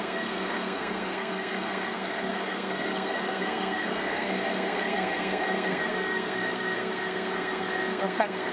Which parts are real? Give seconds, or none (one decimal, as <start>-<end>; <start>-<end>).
none